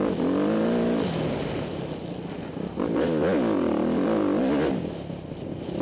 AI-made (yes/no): no